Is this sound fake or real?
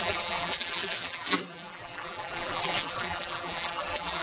fake